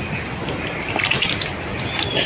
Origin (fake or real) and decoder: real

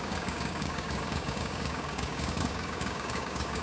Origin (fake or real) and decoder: fake, codec, DAC